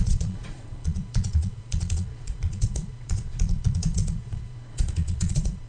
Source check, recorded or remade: remade